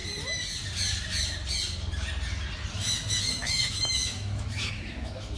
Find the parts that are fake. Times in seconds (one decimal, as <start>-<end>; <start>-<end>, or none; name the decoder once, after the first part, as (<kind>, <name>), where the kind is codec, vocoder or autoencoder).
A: 3.2-5.4 (autoencoder, DAC-VAE)